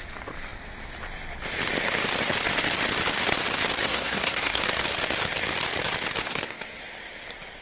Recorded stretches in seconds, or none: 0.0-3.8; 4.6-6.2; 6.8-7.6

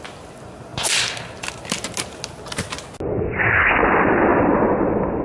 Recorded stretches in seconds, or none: 0.0-5.2

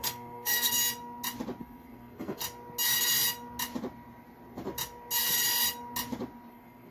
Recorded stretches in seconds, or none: 0.8-1.6; 2.4-6.5